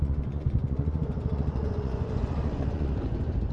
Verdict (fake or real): fake